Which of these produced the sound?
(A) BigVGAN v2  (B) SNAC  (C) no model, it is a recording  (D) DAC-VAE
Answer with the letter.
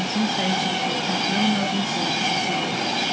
C